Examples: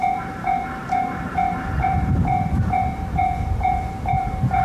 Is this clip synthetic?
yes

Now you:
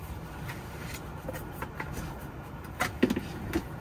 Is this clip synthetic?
no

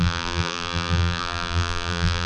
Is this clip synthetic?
yes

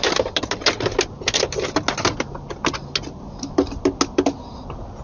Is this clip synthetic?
no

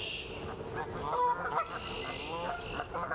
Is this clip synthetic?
no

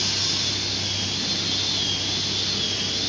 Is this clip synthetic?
no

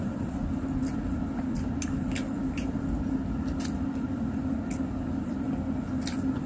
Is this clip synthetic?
no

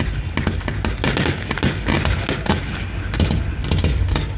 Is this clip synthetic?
no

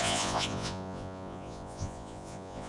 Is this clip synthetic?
yes